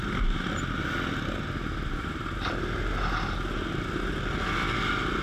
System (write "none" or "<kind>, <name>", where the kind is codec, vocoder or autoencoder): none